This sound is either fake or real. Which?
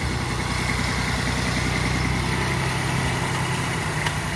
real